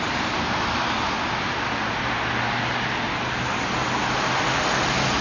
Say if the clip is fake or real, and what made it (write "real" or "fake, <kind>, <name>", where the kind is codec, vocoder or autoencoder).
real